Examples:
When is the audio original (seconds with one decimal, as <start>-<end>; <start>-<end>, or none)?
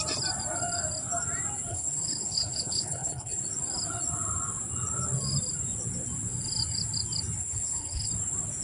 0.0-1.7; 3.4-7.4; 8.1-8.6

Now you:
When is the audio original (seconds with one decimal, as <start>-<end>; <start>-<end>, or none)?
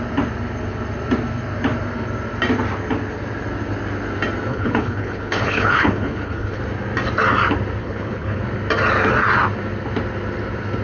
0.0-4.5; 6.6-7.8; 8.4-10.8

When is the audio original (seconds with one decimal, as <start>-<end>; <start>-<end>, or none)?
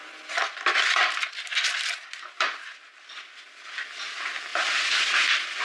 0.0-5.6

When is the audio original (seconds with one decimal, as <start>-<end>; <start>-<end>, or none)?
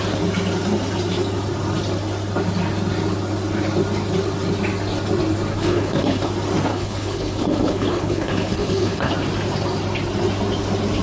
0.0-5.5; 6.3-6.7; 9.1-11.0